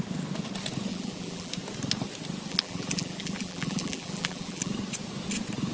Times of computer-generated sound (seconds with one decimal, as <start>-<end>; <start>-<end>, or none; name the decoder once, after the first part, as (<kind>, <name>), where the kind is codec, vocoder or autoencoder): 0.9-1.5 (vocoder, BigVGAN v2); 2.5-4.7